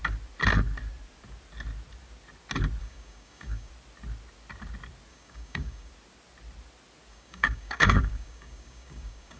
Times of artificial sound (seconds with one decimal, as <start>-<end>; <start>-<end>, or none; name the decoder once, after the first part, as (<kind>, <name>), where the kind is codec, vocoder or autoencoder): 2.8-3.7 (codec, DAC); 5.1-5.9; 7.1-9.4